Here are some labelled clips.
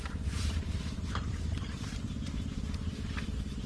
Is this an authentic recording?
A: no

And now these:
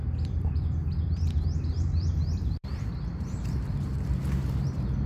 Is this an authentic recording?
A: no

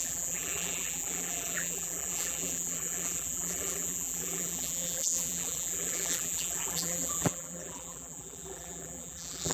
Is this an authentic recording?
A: no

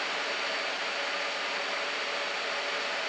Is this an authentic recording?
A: yes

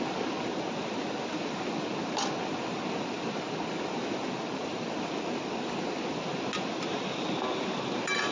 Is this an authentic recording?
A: yes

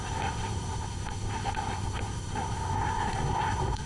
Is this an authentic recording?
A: no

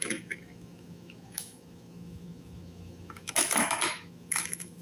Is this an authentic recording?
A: no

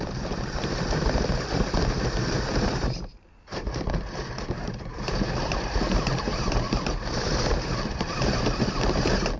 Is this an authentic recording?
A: no